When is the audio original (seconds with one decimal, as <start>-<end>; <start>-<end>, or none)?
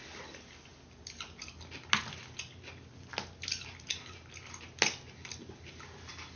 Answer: 0.0-6.4